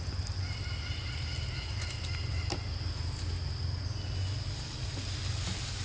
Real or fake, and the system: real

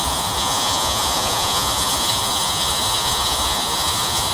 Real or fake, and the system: fake, vocoder, Vocos